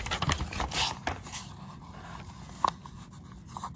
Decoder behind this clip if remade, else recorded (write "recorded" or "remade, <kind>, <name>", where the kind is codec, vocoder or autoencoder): recorded